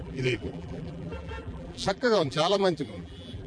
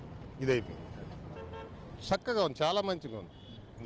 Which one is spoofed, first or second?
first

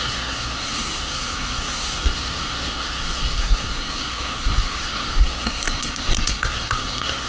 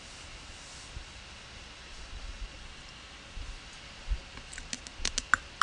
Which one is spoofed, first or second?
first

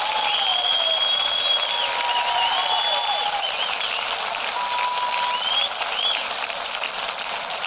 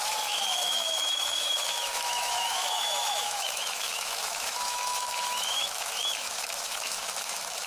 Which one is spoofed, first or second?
second